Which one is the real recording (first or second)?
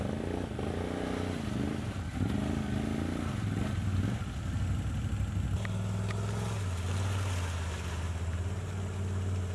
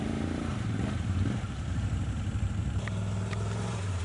first